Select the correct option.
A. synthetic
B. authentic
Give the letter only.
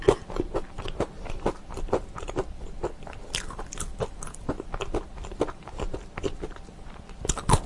B